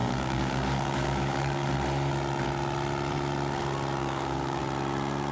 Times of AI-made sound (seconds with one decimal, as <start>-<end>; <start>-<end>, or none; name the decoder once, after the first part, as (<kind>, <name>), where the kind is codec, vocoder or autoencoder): 0.0-1.7 (codec, DAC); 4.0-4.6